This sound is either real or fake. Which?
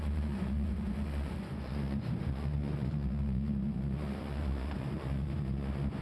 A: fake